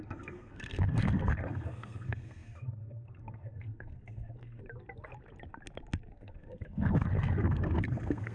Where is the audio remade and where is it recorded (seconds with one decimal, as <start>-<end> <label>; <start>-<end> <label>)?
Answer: 0.0-4.6 remade; 4.6-6.1 recorded; 6.1-8.3 remade